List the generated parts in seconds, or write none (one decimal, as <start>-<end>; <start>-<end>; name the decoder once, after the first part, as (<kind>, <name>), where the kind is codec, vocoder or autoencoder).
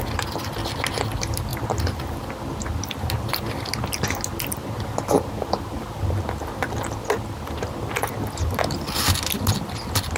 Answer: none